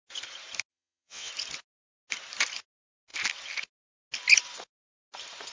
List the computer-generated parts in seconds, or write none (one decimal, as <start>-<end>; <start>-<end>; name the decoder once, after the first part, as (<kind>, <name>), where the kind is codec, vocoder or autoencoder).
0.7-1.3 (vocoder, WaveNeXt)

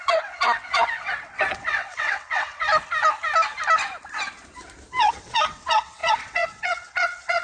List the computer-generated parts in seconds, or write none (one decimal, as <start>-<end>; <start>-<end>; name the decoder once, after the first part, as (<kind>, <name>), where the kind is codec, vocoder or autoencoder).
0.0-2.7 (vocoder, WaveNeXt); 5.0-7.4

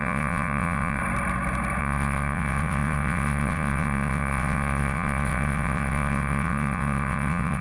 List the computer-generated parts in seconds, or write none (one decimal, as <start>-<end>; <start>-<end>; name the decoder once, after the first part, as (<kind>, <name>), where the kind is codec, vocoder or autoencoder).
0.0-1.0 (vocoder, WaveNeXt); 1.8-7.6